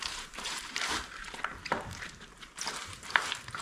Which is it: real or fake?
fake